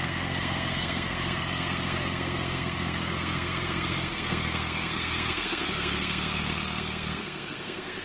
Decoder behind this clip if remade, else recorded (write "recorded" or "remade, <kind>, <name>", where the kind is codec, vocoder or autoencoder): remade, codec, SNAC